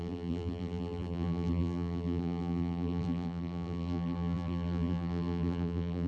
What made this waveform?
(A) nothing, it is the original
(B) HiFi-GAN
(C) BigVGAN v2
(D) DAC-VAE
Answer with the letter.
C